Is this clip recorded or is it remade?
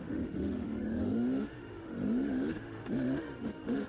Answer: remade